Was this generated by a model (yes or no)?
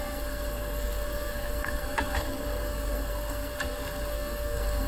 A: yes